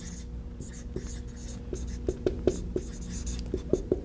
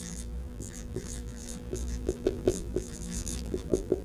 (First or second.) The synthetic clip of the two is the second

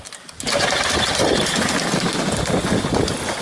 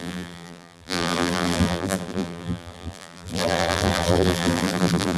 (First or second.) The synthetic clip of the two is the second